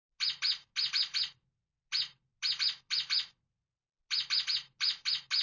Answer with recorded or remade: recorded